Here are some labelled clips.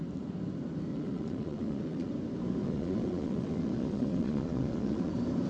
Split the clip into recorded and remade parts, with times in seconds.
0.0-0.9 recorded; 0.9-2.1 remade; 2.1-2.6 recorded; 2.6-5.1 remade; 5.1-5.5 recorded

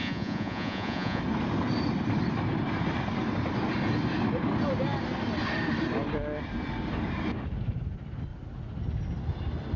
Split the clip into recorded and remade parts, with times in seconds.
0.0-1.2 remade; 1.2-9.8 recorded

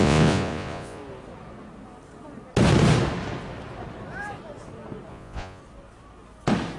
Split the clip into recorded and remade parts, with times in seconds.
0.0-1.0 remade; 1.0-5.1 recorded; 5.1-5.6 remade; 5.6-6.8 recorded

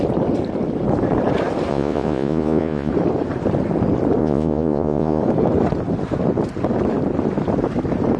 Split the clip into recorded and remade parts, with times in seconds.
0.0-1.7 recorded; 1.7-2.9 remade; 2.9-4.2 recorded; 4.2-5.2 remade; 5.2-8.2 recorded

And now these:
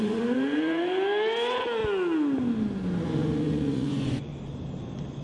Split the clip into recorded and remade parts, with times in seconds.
0.0-1.8 remade; 1.8-3.0 recorded; 3.0-4.3 remade; 4.3-5.2 recorded

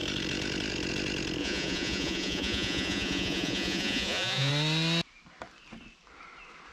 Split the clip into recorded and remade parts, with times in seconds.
0.0-1.4 recorded; 1.4-4.5 remade; 4.5-6.7 recorded